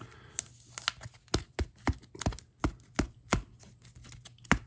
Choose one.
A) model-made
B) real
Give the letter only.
B